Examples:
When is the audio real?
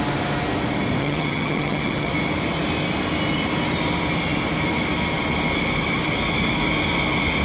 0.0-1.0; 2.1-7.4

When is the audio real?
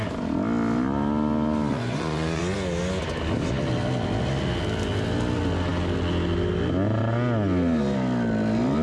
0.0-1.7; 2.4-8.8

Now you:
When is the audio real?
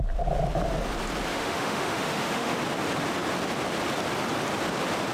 0.0-1.3; 2.6-5.1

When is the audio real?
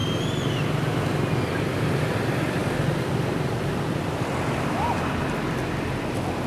0.0-6.5